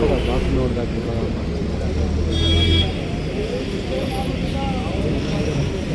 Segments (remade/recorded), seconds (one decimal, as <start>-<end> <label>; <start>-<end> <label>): 0.0-5.9 recorded